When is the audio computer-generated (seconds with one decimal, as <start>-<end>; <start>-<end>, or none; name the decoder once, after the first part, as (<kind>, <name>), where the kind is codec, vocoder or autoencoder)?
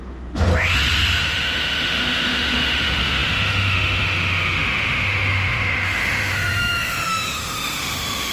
0.0-0.5 (autoencoder, DAC-VAE); 1.2-8.3